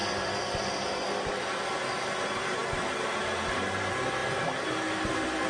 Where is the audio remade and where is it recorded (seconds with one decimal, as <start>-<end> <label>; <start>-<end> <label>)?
0.0-5.5 recorded